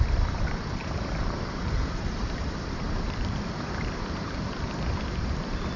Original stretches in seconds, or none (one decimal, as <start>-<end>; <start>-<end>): 0.0-0.8; 4.3-5.8